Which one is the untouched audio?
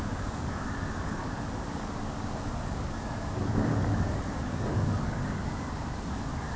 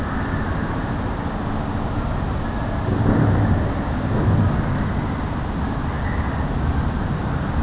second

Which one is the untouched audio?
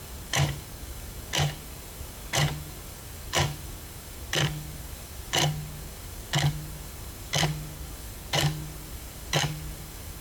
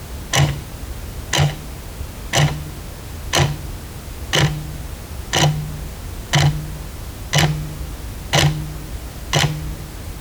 second